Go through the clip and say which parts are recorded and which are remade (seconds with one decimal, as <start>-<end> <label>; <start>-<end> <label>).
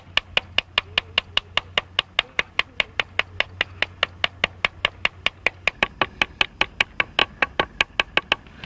0.0-8.7 recorded